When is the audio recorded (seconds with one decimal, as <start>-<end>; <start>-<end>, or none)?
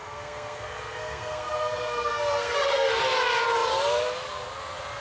3.0-5.0